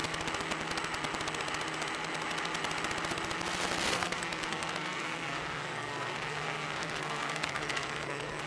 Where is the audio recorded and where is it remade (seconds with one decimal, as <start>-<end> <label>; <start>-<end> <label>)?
0.0-3.9 recorded; 3.9-8.5 remade